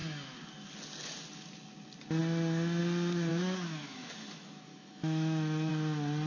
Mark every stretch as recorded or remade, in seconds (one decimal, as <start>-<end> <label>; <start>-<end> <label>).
0.0-3.3 recorded; 3.3-5.7 remade; 5.7-6.3 recorded